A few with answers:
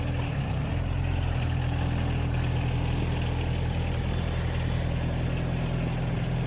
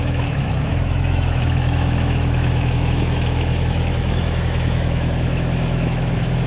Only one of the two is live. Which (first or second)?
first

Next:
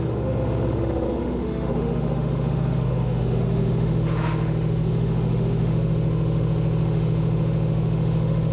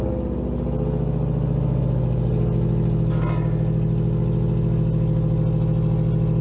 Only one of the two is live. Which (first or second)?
second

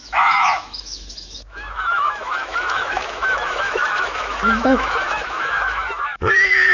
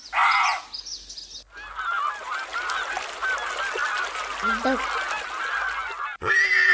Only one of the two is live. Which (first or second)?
second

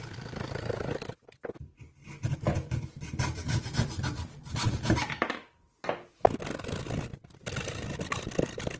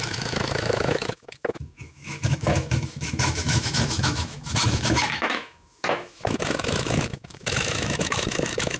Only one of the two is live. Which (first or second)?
first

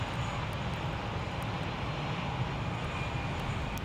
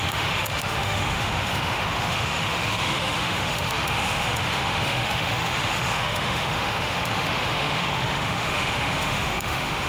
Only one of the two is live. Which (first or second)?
first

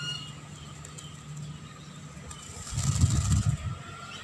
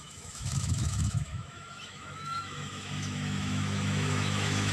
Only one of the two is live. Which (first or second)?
first